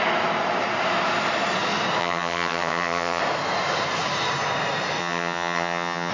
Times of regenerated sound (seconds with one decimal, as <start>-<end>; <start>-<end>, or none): 2.0-3.2; 5.0-6.1